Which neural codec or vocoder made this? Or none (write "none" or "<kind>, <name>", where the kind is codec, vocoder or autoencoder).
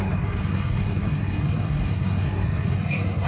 codec, SNAC